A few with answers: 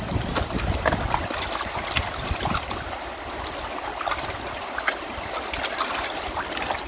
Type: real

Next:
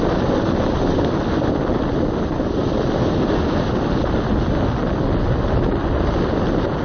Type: real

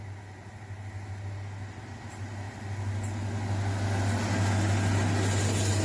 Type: real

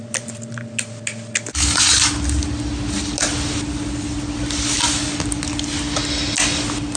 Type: real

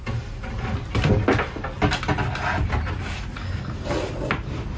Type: real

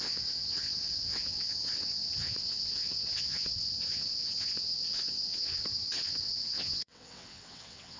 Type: fake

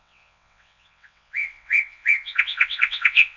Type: fake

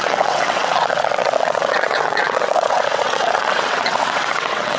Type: fake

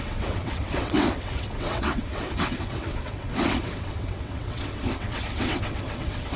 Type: fake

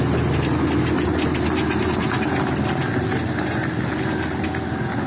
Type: real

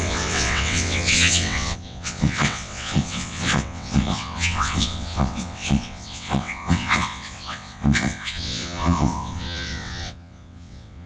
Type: fake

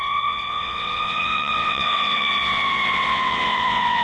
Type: fake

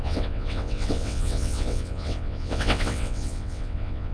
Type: fake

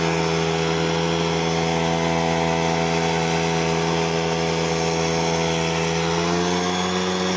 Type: real